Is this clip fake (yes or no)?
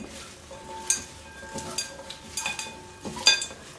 no